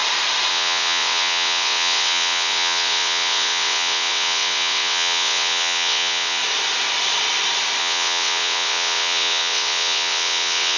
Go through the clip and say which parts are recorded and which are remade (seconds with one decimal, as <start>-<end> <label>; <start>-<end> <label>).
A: 0.0-0.5 recorded; 0.5-6.4 remade; 6.4-7.8 recorded; 7.8-10.8 remade